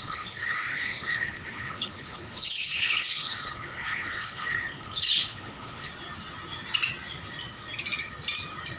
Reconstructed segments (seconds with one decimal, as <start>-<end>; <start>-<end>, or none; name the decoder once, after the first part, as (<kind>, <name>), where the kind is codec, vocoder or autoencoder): 0.0-5.9 (codec, HILCodec)